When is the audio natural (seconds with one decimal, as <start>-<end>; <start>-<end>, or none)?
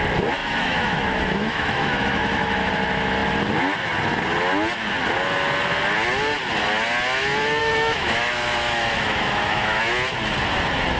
0.0-0.4; 2.7-7.6; 9.8-11.0